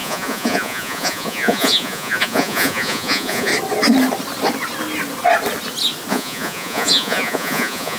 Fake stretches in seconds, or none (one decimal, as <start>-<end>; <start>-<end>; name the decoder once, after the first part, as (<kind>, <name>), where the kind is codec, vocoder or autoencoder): 0.0-3.5 (vocoder, Vocos); 6.1-8.0